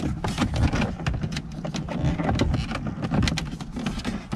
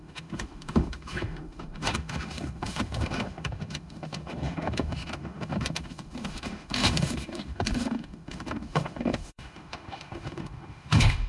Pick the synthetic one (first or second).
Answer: second